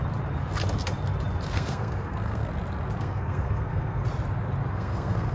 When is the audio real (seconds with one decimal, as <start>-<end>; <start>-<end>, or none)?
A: 0.0-1.5; 2.5-3.0; 4.0-4.7